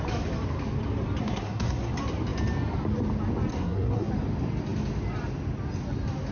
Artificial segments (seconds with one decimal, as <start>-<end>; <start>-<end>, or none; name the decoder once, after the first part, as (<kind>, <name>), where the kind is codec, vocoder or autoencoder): 1.2-1.9 (codec, SNAC); 3.5-4.1